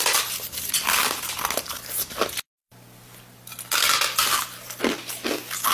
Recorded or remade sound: recorded